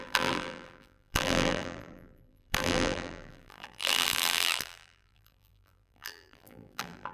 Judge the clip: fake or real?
fake